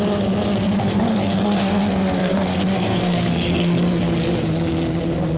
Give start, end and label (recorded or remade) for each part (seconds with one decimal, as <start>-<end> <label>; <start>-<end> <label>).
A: 0.0-0.8 recorded; 0.8-4.0 remade; 4.0-5.4 recorded

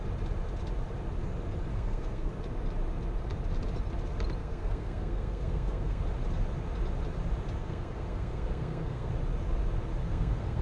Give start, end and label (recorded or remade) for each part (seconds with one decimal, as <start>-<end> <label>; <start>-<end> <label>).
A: 0.0-1.7 recorded; 1.7-2.3 remade; 2.3-4.4 recorded; 4.4-6.0 remade; 6.0-7.6 recorded; 7.6-9.1 remade; 9.1-10.0 recorded; 10.0-10.6 remade

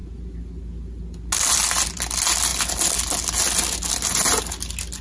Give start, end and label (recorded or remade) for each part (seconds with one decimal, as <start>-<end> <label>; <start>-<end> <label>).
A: 0.0-5.0 recorded

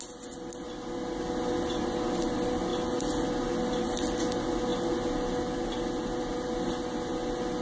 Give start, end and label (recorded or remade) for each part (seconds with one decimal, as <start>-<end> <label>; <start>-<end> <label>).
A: 0.0-7.6 recorded

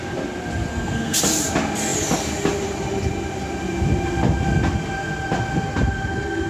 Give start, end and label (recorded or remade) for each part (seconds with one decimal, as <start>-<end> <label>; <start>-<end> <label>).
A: 0.0-0.7 recorded; 0.7-1.2 remade; 1.2-6.5 recorded

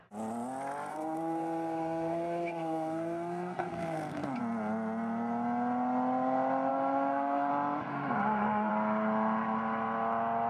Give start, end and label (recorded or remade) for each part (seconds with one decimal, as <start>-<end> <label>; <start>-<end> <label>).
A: 0.0-0.9 recorded; 0.9-4.4 remade; 4.4-6.7 recorded; 6.7-7.5 remade; 7.5-7.9 recorded; 7.9-8.7 remade; 8.7-10.5 recorded

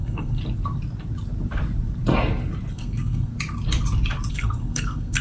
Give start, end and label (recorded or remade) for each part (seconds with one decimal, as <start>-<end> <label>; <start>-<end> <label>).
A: 0.0-0.4 remade; 0.4-2.7 recorded; 2.7-3.3 remade; 3.3-4.3 recorded; 4.3-5.2 remade

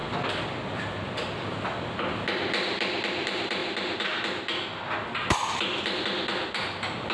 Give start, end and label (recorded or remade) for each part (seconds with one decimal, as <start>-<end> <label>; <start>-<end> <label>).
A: 0.0-7.1 recorded